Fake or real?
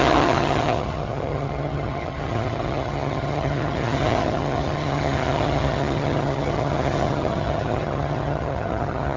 fake